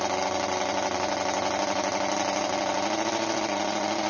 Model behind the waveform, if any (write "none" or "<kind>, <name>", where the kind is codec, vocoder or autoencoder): none